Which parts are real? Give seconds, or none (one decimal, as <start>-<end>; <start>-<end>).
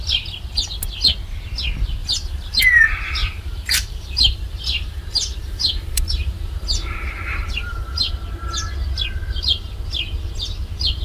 0.0-2.0; 2.6-3.2; 8.1-11.0